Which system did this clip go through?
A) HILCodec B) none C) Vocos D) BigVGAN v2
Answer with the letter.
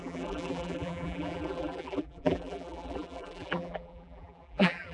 D